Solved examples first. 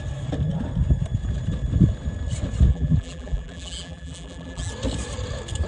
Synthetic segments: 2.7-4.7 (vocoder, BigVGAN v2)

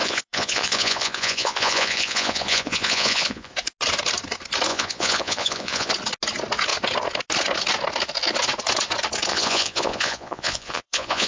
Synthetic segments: 0.0-3.5 (vocoder, Vocos); 4.7-5.9; 9.3-11.3

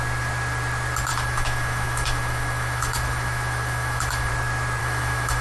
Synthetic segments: 1.1-4.3 (autoencoder, DAC-VAE); 4.8-5.4

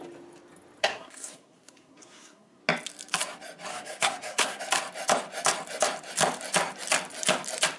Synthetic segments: 0.8-2.6 (codec, SNAC); 3.7-4.6

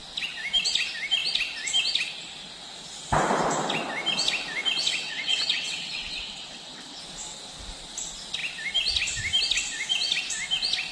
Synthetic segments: 4.9-7.0 (vocoder, WaveNeXt)

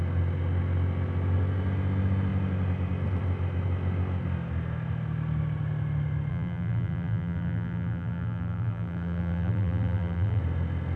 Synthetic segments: 6.3-10.4 (vocoder, BigVGAN v2)

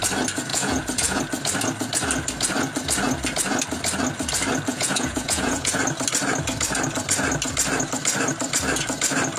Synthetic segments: 0.5-1.2 (vocoder, Vocos); 4.7-5.7

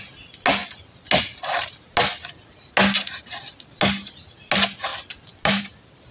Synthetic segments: none